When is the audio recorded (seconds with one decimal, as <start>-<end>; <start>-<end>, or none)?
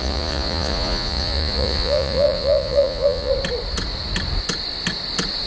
3.3-5.5